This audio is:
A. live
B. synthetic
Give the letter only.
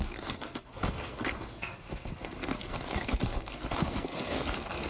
B